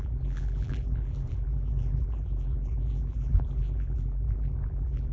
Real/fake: fake